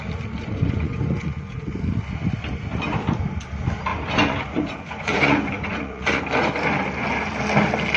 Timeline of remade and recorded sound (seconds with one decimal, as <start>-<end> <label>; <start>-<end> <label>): 0.0-0.4 recorded; 0.4-1.7 remade; 1.7-3.9 recorded; 3.9-6.2 remade; 6.2-8.0 recorded